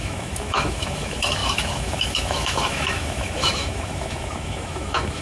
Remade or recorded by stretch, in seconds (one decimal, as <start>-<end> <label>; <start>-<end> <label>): 0.0-5.2 remade